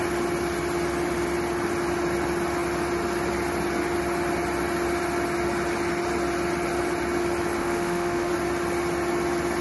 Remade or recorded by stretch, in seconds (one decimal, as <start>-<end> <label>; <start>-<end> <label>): 0.0-7.6 recorded; 7.6-8.3 remade; 8.3-9.6 recorded